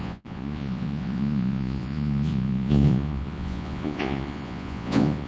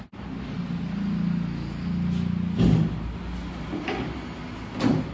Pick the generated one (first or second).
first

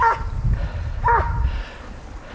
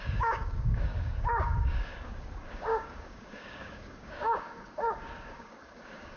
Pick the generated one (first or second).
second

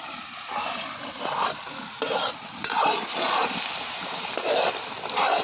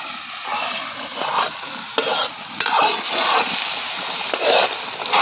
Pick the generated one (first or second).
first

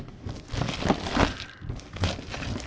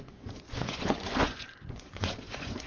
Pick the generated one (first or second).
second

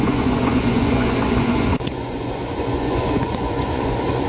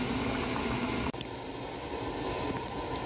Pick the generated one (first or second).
first